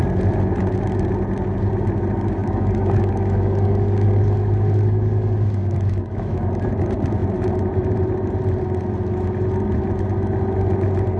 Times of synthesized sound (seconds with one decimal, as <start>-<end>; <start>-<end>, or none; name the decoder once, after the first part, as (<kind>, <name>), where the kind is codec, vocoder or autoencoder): 2.4-6.5 (codec, DAC)